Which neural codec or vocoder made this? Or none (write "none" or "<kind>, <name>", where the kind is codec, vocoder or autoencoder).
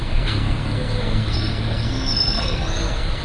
codec, SNAC